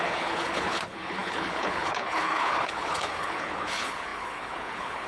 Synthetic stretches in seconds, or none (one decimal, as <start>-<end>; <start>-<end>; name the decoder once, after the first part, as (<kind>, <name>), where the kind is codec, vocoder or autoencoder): 0.0-5.1 (codec, HILCodec)